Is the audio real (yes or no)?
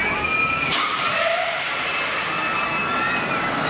yes